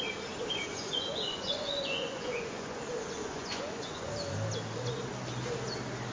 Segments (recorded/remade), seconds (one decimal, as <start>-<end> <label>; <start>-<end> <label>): 0.0-0.7 recorded; 0.7-2.8 remade; 2.8-3.2 recorded; 3.2-4.1 remade; 4.1-6.1 recorded

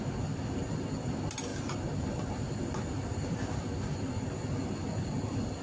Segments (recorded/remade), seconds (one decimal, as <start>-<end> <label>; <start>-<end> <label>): 0.0-5.6 recorded

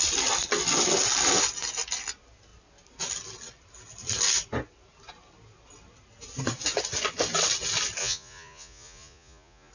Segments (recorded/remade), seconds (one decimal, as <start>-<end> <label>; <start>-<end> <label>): 0.0-8.0 recorded; 8.0-9.7 remade

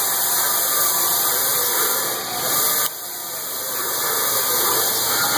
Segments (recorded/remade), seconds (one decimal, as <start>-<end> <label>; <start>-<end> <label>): 0.0-5.4 recorded

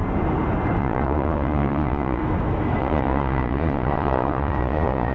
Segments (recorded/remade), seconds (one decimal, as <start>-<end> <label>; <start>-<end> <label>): 0.0-0.8 recorded; 0.8-2.2 remade; 2.2-2.8 recorded; 2.8-5.1 remade

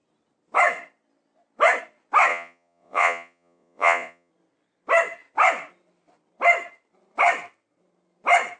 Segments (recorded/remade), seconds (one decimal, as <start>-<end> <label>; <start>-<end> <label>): 0.0-2.3 recorded; 2.3-4.3 remade; 4.3-8.6 recorded

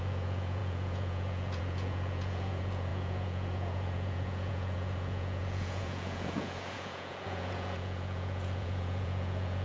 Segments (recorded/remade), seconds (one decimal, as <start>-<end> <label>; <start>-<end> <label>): 0.0-9.6 remade

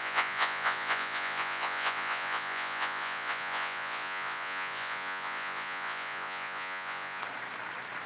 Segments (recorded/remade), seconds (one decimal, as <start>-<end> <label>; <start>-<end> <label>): 0.0-7.2 remade; 7.2-8.1 recorded